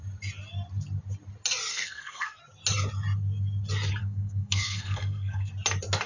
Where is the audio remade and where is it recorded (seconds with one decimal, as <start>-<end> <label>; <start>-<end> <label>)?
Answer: 0.0-1.7 recorded; 1.7-2.4 remade; 2.4-4.0 recorded; 4.0-5.5 remade; 5.5-6.1 recorded